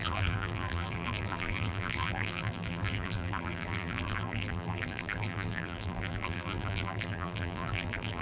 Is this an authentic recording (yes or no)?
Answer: no